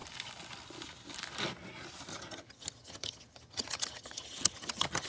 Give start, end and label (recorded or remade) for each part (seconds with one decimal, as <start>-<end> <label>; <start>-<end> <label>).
0.0-2.1 recorded; 2.1-5.1 remade